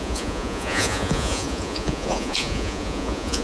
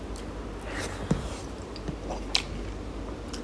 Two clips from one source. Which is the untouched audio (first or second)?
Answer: second